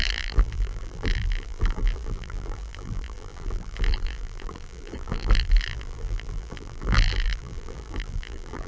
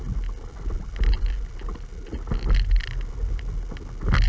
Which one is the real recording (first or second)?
second